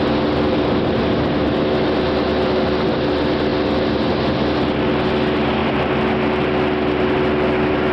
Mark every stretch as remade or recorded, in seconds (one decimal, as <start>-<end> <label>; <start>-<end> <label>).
0.0-7.9 recorded

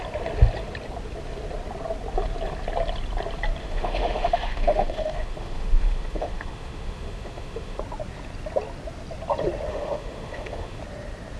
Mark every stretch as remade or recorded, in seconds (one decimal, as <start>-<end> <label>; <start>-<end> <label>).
0.0-3.6 recorded; 3.6-7.8 remade; 7.8-9.7 recorded; 9.7-10.8 remade; 10.8-11.4 recorded

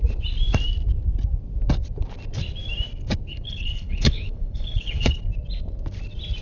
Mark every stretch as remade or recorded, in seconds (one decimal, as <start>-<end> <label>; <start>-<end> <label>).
0.0-3.3 recorded; 3.3-5.2 remade; 5.2-6.4 recorded

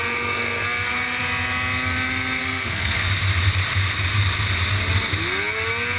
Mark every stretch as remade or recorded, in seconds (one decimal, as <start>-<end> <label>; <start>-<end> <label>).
0.0-2.4 recorded; 2.4-3.1 remade; 3.1-6.0 recorded